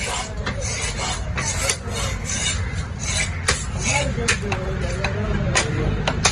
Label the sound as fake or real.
real